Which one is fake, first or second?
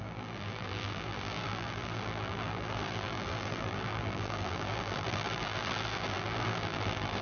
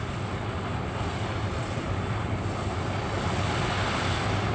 first